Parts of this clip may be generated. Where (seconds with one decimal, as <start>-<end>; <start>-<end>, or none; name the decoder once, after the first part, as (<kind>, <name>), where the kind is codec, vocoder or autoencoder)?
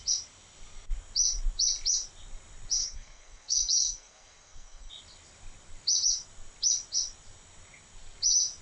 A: 2.8-4.9 (codec, SNAC)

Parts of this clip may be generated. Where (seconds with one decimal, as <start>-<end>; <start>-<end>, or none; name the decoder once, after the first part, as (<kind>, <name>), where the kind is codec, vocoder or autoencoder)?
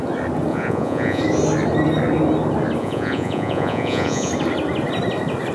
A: 0.5-1.2 (vocoder, Vocos); 2.8-4.3